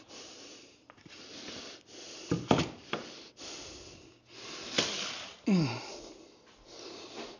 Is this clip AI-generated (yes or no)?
no